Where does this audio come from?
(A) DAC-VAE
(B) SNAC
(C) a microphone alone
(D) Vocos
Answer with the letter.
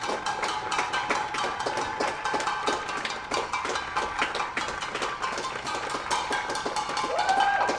C